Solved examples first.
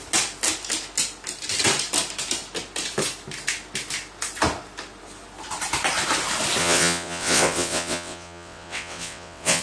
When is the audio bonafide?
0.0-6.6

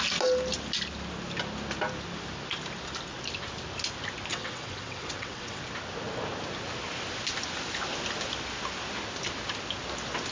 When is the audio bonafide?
0.0-4.3; 5.6-10.3

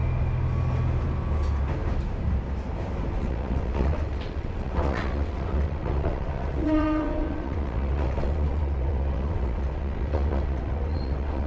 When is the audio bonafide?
0.0-3.1

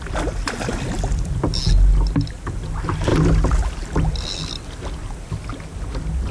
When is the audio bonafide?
0.0-6.3